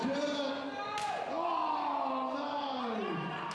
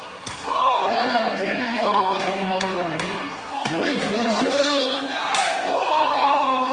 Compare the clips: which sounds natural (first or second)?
first